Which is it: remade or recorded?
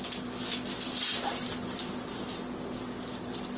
recorded